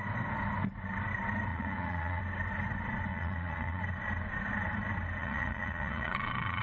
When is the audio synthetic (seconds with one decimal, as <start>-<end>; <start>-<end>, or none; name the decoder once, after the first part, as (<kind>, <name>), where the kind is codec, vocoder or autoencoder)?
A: 1.5-2.2 (vocoder, Vocos); 3.1-3.8; 5.2-6.6

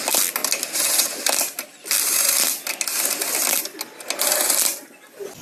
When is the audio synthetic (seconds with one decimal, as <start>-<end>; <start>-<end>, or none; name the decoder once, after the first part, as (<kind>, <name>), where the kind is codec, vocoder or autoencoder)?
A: none

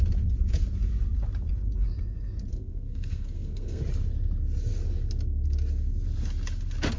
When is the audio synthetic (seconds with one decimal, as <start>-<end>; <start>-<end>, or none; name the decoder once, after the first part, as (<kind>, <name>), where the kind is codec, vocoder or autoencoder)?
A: 2.5-3.8 (codec, SNAC)

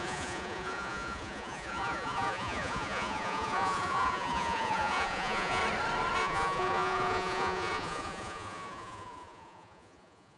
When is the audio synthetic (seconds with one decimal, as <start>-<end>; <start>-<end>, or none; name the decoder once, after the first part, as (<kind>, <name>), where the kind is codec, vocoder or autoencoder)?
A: 0.0-5.6 (vocoder, Vocos); 6.2-10.4